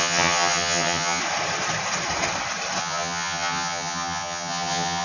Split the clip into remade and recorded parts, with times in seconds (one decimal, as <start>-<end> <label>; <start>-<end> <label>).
0.0-1.2 remade; 1.2-2.8 recorded; 2.8-5.0 remade